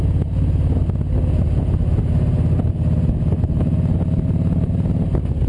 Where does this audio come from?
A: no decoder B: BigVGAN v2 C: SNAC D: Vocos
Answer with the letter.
A